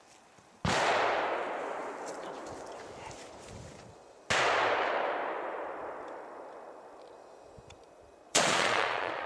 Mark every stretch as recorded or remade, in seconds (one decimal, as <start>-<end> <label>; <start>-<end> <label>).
0.0-8.2 recorded; 8.2-9.3 remade